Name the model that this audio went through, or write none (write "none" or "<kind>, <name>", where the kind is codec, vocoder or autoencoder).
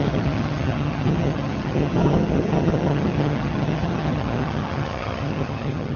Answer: vocoder, HiFi-GAN